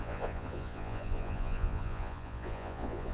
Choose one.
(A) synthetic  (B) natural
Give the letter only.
A